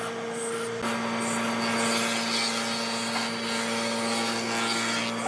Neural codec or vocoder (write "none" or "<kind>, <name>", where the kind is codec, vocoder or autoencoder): none